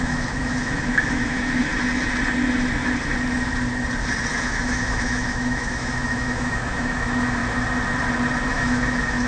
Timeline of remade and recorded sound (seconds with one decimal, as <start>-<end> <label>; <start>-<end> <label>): 0.0-1.7 remade; 1.7-4.3 recorded; 4.3-7.4 remade; 7.4-8.5 recorded; 8.5-9.3 remade